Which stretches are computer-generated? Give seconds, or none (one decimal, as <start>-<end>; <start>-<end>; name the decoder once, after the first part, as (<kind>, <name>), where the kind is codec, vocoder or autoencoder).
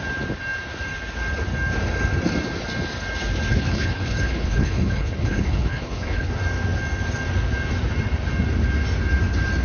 3.5-6.3 (codec, HILCodec)